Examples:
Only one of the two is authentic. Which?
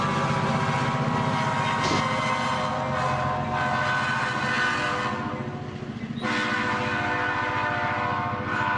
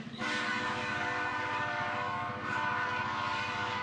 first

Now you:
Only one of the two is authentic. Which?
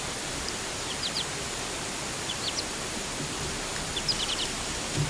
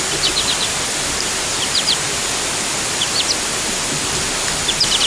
second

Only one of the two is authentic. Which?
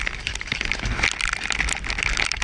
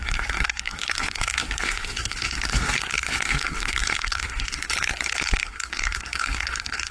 first